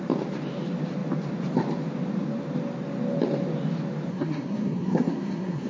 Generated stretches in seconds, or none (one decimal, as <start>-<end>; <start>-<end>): 4.1-5.7